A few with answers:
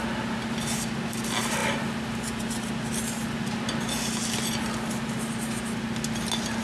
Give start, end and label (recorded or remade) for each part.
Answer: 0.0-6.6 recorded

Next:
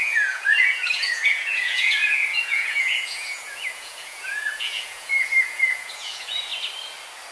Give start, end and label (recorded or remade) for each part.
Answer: 0.0-6.5 remade; 6.5-7.3 recorded